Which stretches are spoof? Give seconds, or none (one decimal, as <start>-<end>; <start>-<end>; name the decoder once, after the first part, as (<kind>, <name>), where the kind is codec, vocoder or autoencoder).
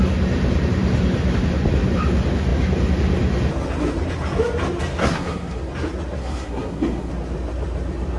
5.0-5.6 (codec, SNAC); 6.2-7.1